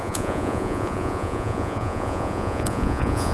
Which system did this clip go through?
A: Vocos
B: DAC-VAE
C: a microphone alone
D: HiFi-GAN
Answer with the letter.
A